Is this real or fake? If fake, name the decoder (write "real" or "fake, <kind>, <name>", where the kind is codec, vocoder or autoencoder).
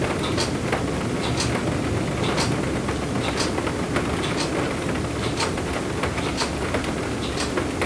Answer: real